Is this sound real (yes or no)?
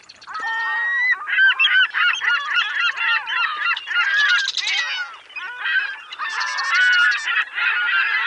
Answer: yes